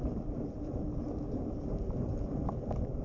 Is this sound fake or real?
real